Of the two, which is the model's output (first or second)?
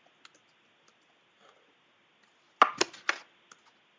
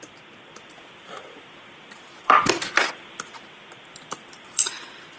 second